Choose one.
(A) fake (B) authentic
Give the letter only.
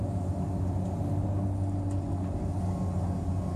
B